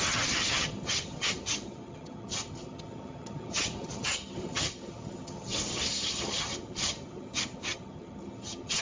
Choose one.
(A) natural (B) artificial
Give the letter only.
B